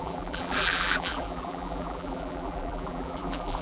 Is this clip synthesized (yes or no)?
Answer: yes